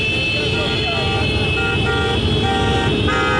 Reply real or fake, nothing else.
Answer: real